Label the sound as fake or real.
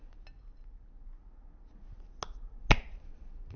real